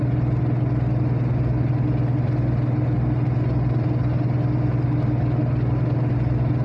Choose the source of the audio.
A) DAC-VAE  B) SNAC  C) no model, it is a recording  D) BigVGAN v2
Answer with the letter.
C